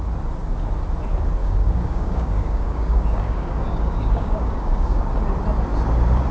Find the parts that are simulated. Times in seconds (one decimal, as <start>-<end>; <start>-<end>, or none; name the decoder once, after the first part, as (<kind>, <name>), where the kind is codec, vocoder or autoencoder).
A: 1.4-5.0 (codec, DAC)

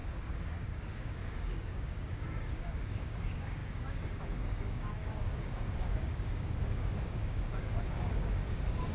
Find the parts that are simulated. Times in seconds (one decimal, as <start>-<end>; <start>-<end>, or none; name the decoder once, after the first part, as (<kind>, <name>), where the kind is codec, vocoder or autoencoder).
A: 0.0-8.9 (codec, DAC)

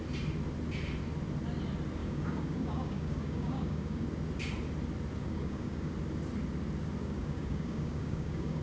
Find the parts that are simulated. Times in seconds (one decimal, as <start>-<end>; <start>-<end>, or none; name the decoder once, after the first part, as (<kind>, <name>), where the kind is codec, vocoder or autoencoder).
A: 2.0-4.0 (codec, DAC); 5.2-5.9; 7.0-8.6